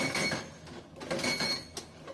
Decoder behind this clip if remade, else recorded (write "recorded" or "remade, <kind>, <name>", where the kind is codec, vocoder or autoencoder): recorded